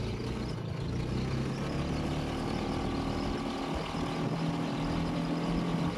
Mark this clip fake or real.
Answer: real